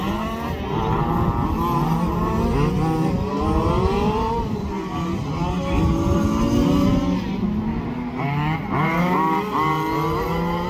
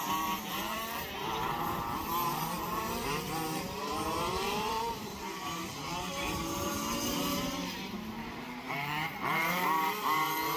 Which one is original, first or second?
first